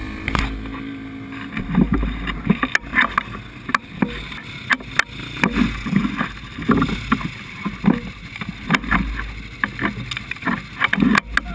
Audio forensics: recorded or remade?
recorded